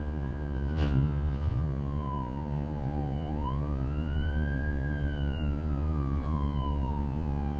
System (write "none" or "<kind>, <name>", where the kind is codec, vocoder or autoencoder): vocoder, Vocos